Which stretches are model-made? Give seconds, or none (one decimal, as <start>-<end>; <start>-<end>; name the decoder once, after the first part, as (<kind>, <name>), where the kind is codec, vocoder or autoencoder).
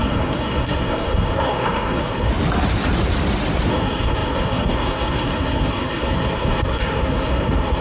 0.0-2.3 (codec, SNAC); 3.7-7.8